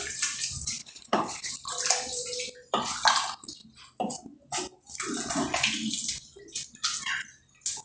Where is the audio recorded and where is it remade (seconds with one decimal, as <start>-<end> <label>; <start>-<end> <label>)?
0.0-0.8 recorded; 0.8-1.5 remade; 1.5-7.8 recorded